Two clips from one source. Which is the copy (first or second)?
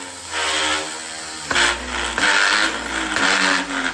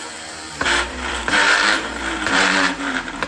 second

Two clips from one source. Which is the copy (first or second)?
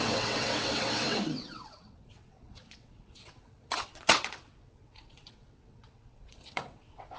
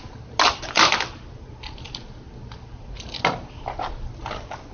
first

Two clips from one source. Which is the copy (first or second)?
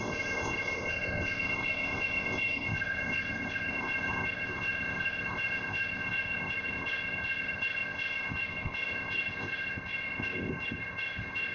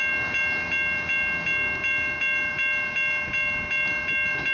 first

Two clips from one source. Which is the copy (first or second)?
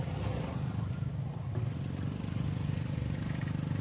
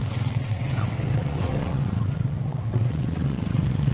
second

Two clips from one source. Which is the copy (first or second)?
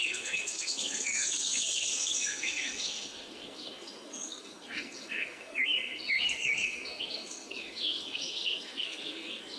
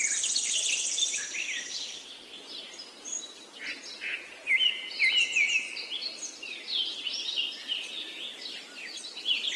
first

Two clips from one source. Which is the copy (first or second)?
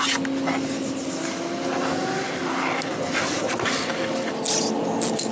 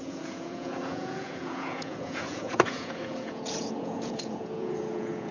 second